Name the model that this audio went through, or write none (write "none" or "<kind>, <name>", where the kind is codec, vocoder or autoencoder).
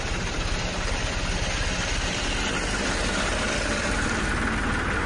none